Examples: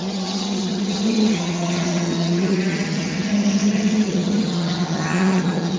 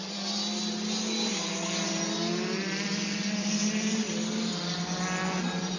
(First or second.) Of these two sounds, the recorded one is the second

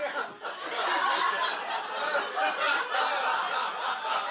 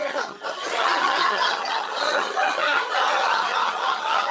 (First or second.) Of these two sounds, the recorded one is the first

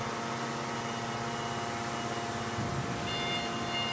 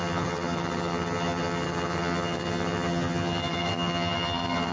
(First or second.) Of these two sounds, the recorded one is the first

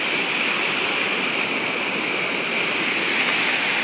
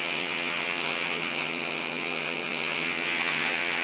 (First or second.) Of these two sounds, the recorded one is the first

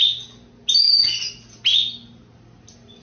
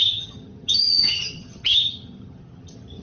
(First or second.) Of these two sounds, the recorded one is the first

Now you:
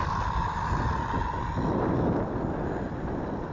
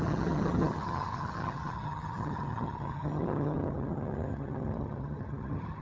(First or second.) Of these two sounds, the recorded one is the first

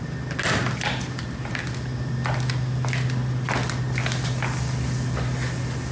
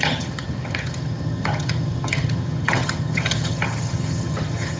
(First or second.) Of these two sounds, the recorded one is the first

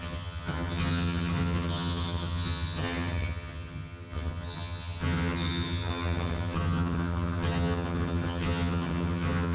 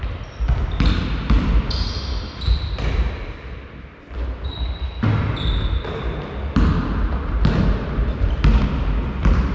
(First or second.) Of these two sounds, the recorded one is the second